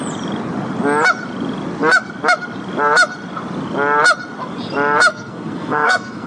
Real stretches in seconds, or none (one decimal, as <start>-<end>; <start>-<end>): 0.0-5.1